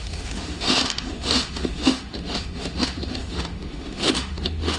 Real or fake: fake